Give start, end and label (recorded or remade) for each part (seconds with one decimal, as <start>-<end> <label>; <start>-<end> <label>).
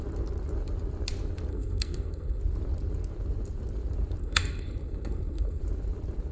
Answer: 0.0-1.5 recorded; 1.5-2.4 remade; 2.4-4.2 recorded; 4.2-5.6 remade; 5.6-6.3 recorded